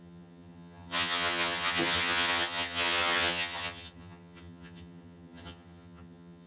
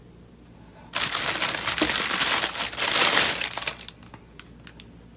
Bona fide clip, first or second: second